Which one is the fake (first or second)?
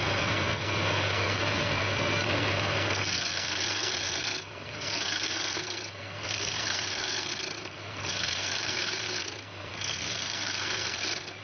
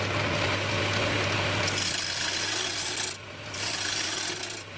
first